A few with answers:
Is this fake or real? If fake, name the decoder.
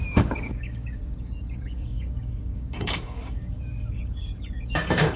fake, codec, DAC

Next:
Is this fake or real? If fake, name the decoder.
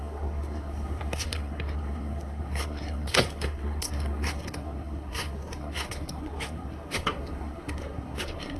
fake, codec, SNAC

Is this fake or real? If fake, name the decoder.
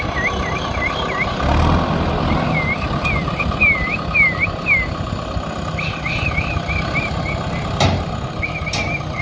real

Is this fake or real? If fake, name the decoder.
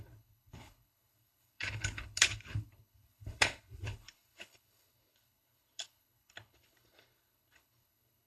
fake, codec, HILCodec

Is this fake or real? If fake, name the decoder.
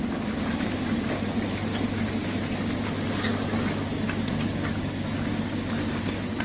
real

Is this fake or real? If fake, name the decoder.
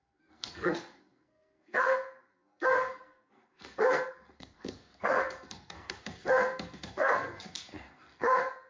fake, codec, SNAC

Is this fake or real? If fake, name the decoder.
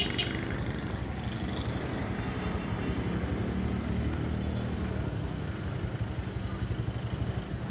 real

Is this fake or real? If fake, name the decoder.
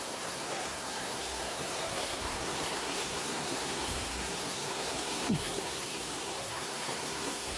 fake, codec, SNAC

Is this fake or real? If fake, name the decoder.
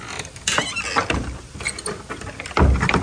real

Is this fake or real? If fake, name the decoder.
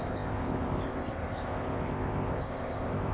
fake, codec, ZipCodec